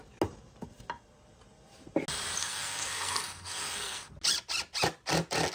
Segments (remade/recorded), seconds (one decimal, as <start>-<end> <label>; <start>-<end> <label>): 0.0-2.4 recorded; 2.4-4.1 remade; 4.1-5.5 recorded